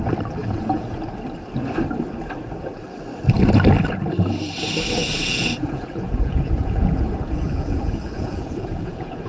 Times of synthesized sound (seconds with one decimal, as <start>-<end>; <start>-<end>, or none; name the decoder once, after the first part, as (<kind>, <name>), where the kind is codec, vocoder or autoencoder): 0.4-1.0 (vocoder, Vocos); 5.0-9.3